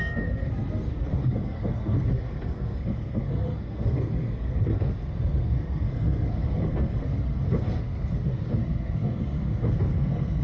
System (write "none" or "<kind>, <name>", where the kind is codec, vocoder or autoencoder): codec, SNAC